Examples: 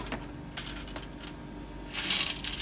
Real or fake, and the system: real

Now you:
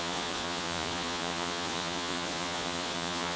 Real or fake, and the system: fake, vocoder, Vocos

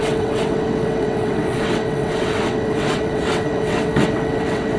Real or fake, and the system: fake, vocoder, WaveNeXt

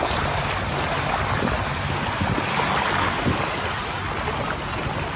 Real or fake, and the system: real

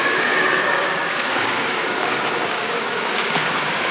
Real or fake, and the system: fake, codec, DAC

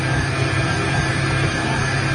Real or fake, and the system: real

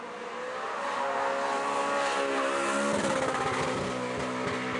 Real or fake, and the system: real